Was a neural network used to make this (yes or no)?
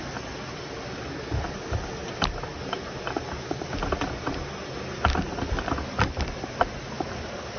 no